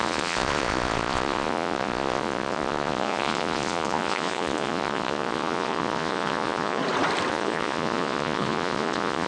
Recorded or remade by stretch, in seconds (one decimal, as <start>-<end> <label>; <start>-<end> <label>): 0.0-6.8 remade; 6.8-7.3 recorded; 7.3-9.3 remade